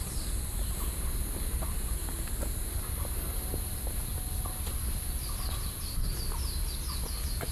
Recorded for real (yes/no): yes